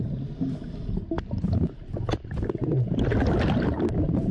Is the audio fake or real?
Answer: real